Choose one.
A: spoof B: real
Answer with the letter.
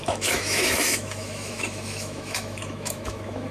A